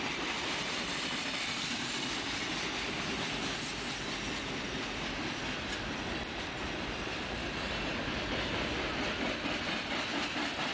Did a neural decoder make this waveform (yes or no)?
no